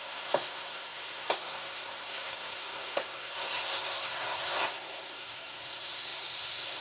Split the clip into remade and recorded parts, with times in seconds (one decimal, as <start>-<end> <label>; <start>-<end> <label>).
0.0-6.8 remade